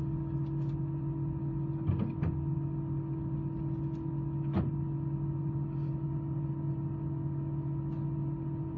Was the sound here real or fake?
real